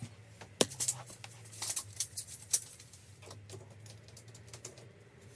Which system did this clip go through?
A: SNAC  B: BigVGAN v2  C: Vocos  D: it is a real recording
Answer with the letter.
D